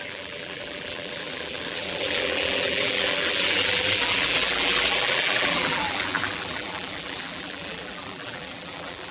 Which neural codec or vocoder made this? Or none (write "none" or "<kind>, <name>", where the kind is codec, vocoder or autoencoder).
vocoder, BigVGAN v2